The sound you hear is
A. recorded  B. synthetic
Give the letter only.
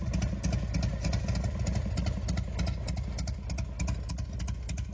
A